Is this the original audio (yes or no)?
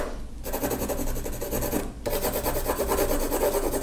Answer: yes